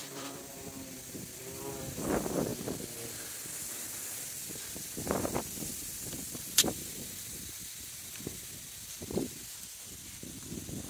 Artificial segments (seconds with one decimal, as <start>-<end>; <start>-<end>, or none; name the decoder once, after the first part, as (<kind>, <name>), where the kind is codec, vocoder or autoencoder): 0.0-2.5 (vocoder, BigVGAN v2); 3.7-10.9